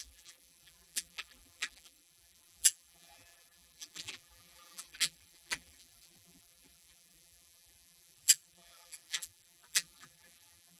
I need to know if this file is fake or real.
fake